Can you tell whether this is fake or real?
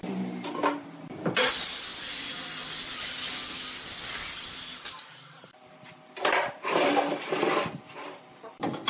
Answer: real